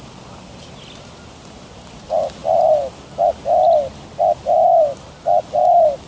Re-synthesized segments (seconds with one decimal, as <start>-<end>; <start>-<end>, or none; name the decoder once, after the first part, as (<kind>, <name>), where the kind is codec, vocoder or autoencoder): none